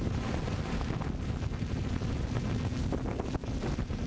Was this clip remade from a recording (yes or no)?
no